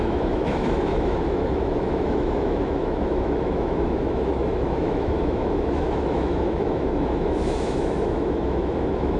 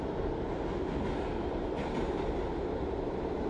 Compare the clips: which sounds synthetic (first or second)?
first